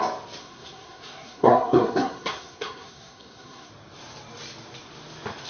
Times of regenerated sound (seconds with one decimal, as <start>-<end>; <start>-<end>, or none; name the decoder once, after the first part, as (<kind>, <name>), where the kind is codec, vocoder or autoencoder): 0.4-3.7 (codec, SNAC)